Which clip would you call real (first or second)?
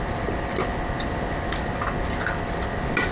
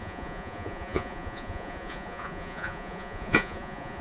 first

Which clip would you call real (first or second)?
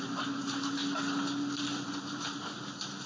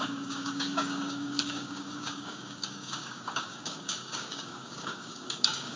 first